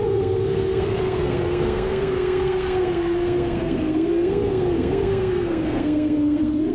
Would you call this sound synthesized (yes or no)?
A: yes